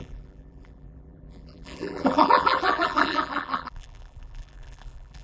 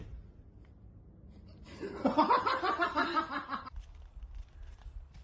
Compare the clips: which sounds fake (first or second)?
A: first